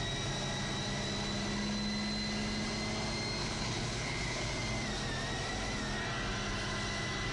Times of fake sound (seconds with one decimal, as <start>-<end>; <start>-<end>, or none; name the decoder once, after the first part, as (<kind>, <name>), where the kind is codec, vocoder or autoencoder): 3.4-4.5 (codec, HILCodec)